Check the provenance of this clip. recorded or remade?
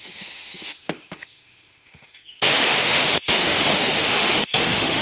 remade